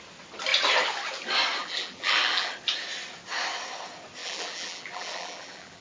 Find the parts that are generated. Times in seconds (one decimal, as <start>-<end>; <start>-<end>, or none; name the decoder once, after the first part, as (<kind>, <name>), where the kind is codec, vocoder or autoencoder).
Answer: 1.6-2.5 (vocoder, BigVGAN v2); 4.2-5.8